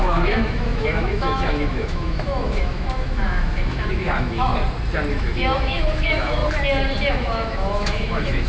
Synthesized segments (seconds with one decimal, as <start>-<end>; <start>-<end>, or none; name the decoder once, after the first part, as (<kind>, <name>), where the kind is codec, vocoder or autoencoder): 0.0-4.5 (autoencoder, DAC-VAE); 5.1-6.4; 7.1-8.5